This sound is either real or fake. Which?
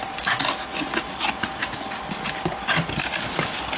real